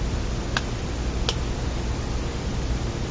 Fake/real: real